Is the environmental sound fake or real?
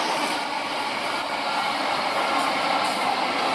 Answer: real